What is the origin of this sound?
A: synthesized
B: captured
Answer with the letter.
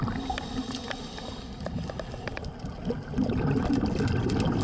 B